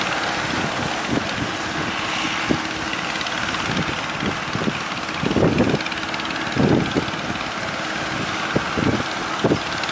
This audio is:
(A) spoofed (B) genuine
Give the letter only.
B